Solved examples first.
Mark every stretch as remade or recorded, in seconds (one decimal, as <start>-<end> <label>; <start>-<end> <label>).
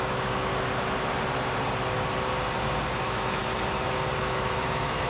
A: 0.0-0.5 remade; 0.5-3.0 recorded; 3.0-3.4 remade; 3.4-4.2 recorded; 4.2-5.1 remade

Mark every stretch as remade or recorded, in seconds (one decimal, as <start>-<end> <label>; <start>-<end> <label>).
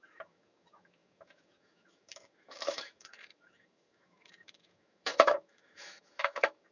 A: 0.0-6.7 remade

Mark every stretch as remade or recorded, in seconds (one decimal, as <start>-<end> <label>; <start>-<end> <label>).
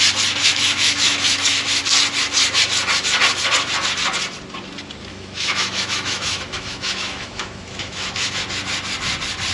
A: 0.0-0.4 recorded; 0.4-1.8 remade; 1.8-5.1 recorded; 5.1-8.4 remade; 8.4-9.5 recorded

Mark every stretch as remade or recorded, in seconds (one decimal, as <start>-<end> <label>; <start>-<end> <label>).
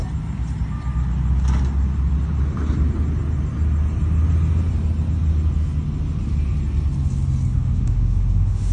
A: 0.0-7.5 recorded; 7.5-8.7 remade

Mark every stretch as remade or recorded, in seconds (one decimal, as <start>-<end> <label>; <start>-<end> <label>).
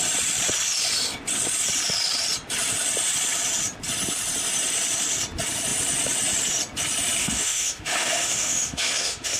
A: 0.0-7.2 recorded; 7.2-9.4 remade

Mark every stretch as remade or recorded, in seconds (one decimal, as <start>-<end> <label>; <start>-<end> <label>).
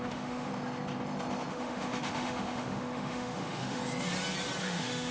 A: 0.0-0.5 remade; 0.5-1.5 recorded; 1.5-3.8 remade; 3.8-4.6 recorded; 4.6-5.1 remade